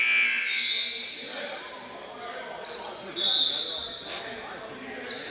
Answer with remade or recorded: recorded